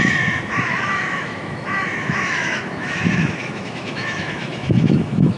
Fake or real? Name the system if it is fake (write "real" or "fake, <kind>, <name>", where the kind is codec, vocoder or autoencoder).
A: fake, autoencoder, DAC-VAE